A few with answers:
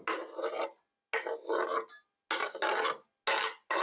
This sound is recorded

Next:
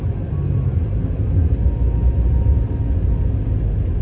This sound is recorded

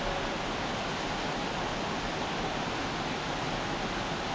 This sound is recorded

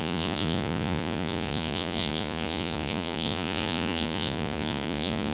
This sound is remade